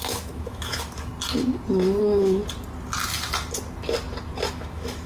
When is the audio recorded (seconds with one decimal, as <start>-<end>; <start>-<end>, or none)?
1.1-2.0; 2.4-4.5